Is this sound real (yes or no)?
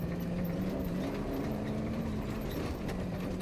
no